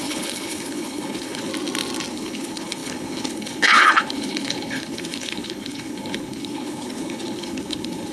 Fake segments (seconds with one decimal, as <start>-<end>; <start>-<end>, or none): 0.0-1.5; 2.1-8.1